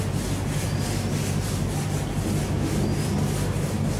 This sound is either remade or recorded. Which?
recorded